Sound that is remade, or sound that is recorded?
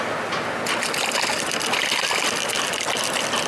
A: recorded